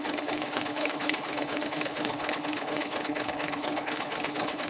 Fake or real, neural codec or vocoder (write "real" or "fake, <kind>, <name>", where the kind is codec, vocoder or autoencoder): fake, codec, HILCodec